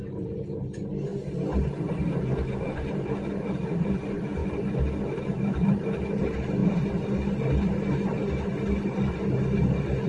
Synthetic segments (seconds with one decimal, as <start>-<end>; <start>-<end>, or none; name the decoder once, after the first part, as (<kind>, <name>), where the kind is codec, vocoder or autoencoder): none